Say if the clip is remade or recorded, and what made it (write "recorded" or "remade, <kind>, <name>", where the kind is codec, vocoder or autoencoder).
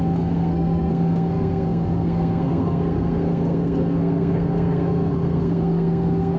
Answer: remade, codec, SNAC